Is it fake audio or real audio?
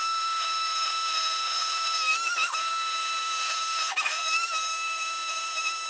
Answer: fake